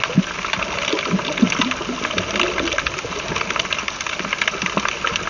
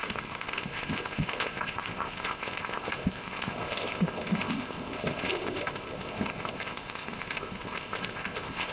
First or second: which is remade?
second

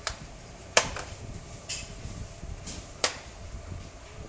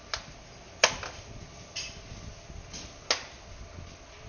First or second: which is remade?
first